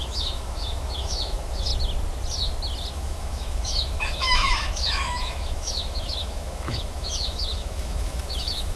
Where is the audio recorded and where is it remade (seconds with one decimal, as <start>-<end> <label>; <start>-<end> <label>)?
0.0-1.7 remade; 1.7-2.9 recorded; 2.9-8.8 remade